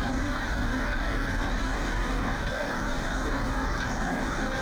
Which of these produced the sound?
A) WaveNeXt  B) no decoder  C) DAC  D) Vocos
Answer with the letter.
C